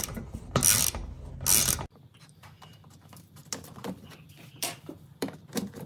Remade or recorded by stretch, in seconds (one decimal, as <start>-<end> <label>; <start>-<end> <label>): 0.0-0.6 remade; 0.6-2.2 recorded; 2.2-3.4 remade; 3.4-4.6 recorded; 4.6-5.9 remade